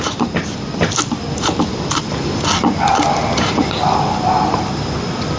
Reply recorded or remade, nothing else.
recorded